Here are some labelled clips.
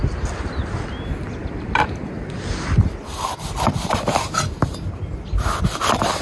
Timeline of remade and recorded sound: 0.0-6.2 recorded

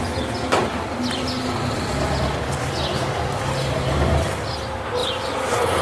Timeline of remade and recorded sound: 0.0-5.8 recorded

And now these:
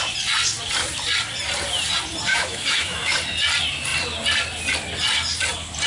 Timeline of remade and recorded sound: 0.0-2.3 recorded; 2.3-3.1 remade; 3.1-5.9 recorded

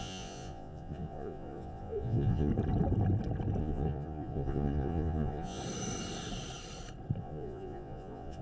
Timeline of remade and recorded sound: 0.0-2.5 remade; 2.5-3.6 recorded; 3.6-5.6 remade; 5.6-7.2 recorded; 7.2-8.4 remade

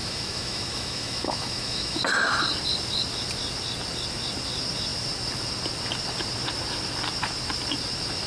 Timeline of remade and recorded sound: 0.0-2.0 remade; 2.0-8.3 recorded

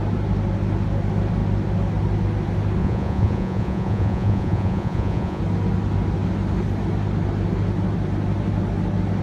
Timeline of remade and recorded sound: 0.0-2.8 recorded; 2.8-5.4 remade; 5.4-9.2 recorded